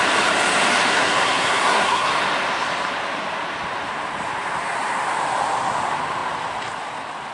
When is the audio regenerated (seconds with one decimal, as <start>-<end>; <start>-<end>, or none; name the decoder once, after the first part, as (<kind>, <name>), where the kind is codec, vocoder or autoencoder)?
0.9-2.1 (codec, SNAC)